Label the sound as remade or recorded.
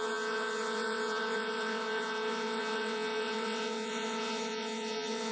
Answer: remade